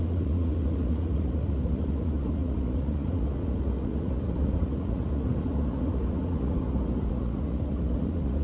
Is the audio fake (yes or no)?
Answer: yes